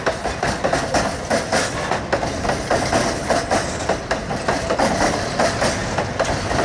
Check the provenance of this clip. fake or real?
real